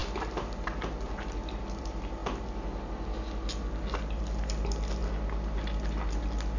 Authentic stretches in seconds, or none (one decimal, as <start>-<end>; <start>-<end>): 0.0-6.6